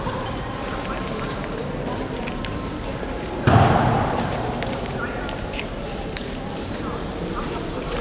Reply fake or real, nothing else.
fake